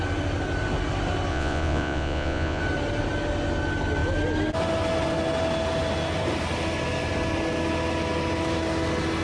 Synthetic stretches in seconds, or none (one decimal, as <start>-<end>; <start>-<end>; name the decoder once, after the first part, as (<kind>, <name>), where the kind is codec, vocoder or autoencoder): 1.3-2.6 (vocoder, Vocos)